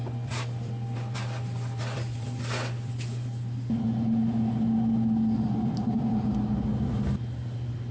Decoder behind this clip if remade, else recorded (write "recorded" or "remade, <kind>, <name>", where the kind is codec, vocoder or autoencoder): recorded